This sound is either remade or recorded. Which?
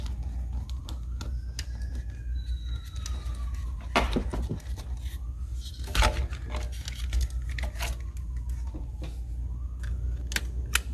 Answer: recorded